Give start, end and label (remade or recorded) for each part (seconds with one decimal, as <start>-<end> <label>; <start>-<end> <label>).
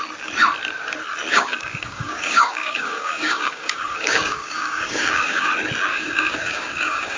0.0-1.3 recorded; 1.3-5.5 remade; 5.5-5.9 recorded; 5.9-7.2 remade